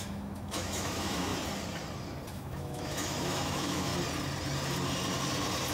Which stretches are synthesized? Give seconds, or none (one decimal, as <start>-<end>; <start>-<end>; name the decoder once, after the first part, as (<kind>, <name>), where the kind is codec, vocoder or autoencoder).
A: 0.0-1.3 (autoencoder, DAC-VAE); 2.3-3.9